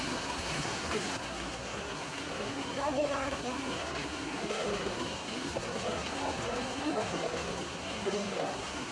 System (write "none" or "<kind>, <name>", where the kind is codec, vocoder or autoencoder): codec, SNAC